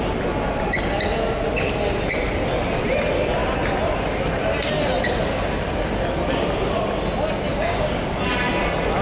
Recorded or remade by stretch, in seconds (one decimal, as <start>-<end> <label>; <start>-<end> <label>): 0.0-7.5 recorded; 7.5-8.2 remade; 8.2-9.0 recorded